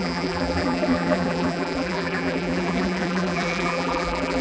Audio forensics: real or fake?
fake